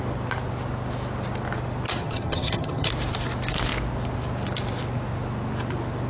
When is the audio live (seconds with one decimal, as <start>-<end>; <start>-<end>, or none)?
0.0-2.0; 2.9-6.1